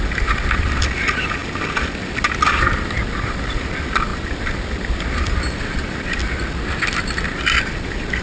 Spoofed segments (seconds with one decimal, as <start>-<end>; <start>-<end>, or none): none